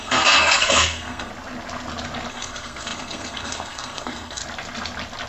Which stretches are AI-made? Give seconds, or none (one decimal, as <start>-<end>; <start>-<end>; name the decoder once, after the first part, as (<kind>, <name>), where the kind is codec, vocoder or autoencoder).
0.0-1.3 (codec, SNAC); 2.3-4.4